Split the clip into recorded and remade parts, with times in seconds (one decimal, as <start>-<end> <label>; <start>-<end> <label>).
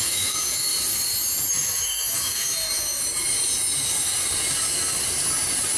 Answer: 0.0-0.7 remade; 0.7-1.5 recorded; 1.5-3.0 remade; 3.0-5.8 recorded